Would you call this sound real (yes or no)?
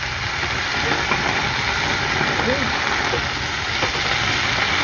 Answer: yes